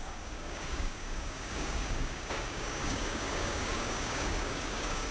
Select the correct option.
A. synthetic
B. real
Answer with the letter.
A